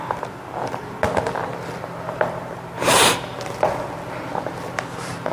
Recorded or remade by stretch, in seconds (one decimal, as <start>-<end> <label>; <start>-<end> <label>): 0.0-5.3 recorded